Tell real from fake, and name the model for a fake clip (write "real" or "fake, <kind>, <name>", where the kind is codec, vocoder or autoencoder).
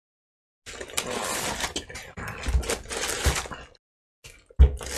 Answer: real